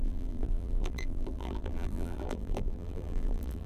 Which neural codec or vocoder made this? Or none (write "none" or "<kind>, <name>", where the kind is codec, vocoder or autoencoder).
vocoder, BigVGAN v2